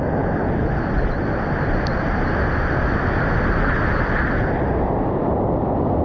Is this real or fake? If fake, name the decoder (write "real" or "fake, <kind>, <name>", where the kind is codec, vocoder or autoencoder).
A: real